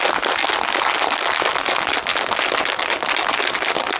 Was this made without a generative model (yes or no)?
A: yes